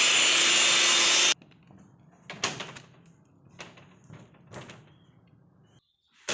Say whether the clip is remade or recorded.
recorded